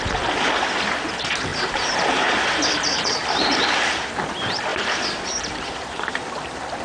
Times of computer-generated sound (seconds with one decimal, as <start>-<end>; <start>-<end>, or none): 1.5-2.6; 3.2-4.1; 4.7-6.3